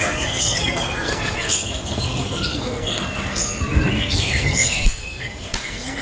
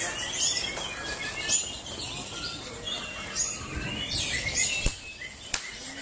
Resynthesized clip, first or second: first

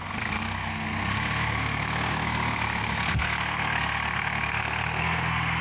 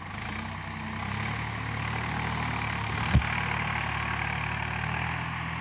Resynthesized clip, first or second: first